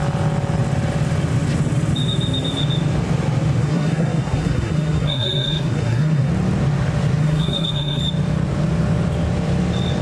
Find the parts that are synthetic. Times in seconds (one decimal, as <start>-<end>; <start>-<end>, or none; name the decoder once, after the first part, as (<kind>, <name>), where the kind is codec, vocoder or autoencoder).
3.6-6.3 (codec, SNAC); 7.2-8.0